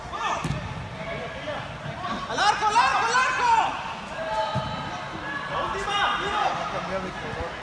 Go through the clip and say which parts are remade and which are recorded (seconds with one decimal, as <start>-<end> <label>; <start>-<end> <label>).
0.0-7.6 recorded